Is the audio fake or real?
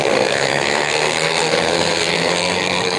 fake